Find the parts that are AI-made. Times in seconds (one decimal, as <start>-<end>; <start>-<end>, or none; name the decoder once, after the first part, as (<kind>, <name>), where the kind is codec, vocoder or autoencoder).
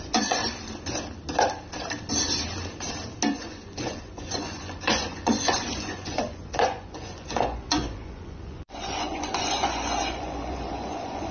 0.0-0.4 (vocoder, Vocos); 3.3-11.3